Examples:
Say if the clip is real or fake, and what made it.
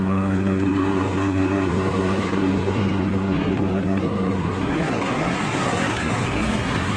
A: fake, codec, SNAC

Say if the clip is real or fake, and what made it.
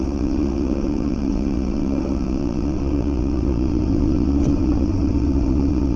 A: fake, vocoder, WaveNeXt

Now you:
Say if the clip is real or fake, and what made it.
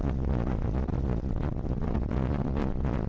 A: fake, vocoder, Vocos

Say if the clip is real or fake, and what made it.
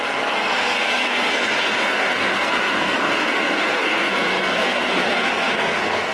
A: fake, codec, SNAC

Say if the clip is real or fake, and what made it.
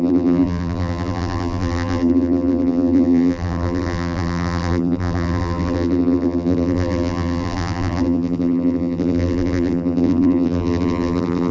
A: fake, vocoder, BigVGAN v2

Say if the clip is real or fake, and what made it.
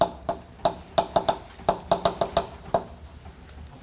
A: real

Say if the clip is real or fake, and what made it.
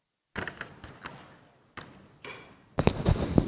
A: real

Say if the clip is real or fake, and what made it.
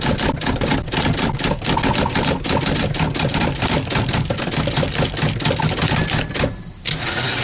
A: real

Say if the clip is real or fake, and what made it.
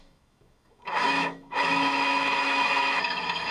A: fake, autoencoder, DAC-VAE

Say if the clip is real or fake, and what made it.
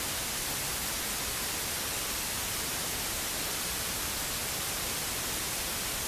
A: real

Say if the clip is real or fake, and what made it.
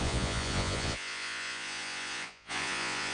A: fake, vocoder, Vocos